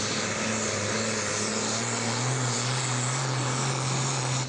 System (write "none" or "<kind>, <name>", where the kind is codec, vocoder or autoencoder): none